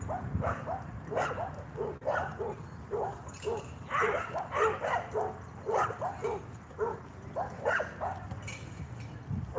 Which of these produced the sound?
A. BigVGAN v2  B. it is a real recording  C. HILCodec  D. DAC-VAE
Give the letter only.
B